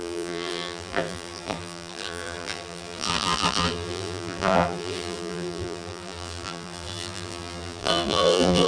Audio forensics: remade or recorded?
remade